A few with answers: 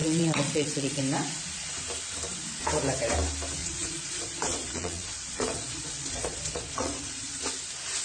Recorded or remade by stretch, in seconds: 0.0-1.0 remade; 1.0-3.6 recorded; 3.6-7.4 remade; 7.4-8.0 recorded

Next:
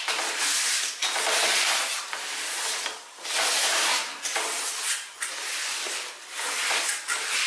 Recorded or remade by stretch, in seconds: 0.0-1.0 remade; 1.0-3.3 recorded; 3.3-7.5 remade